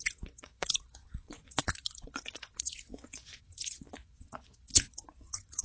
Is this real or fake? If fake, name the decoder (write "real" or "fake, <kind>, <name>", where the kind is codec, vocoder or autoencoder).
fake, vocoder, Vocos